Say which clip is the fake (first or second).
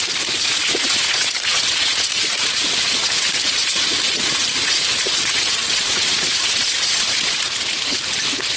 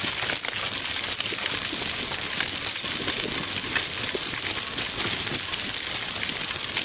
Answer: first